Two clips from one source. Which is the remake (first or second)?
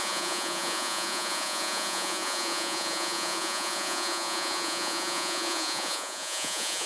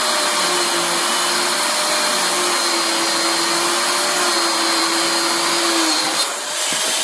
first